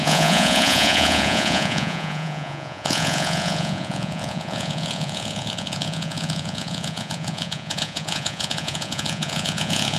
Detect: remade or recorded remade